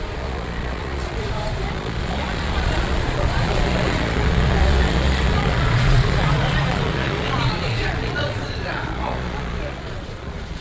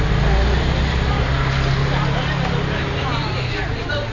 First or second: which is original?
second